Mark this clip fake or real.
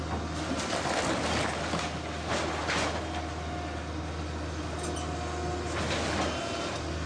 real